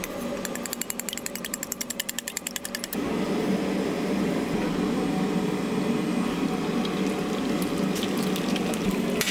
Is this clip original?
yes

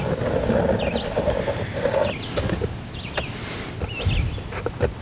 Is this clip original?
yes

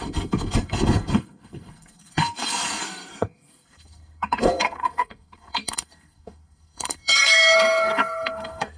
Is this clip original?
no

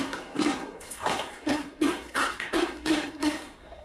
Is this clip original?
no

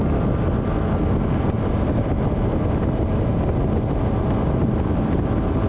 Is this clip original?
yes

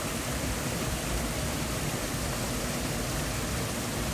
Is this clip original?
yes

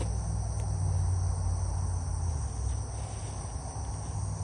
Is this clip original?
yes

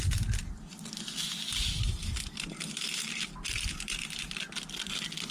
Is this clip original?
yes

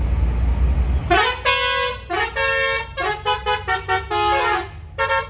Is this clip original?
yes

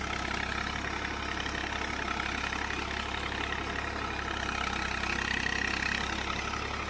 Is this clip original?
yes